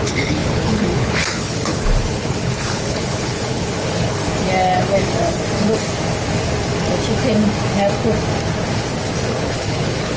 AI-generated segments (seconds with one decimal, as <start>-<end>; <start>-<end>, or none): 0.0-4.2; 9.3-10.2